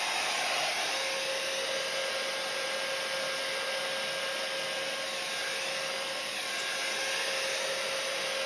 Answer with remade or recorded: recorded